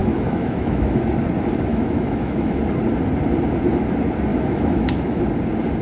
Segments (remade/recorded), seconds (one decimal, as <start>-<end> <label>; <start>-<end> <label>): 0.0-1.0 remade; 1.0-1.7 recorded; 1.7-2.6 remade; 2.6-4.3 recorded; 4.3-5.2 remade; 5.2-5.8 recorded